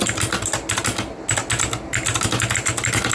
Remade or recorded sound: recorded